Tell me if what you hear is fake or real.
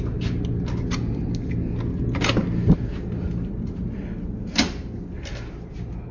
real